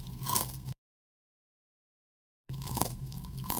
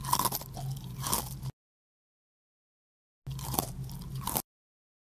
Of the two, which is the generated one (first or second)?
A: first